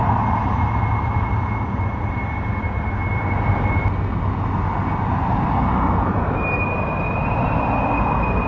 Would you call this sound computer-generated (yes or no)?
no